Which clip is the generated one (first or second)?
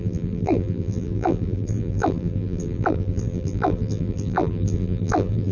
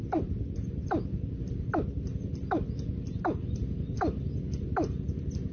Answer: first